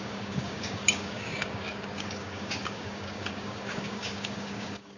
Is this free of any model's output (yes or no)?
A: no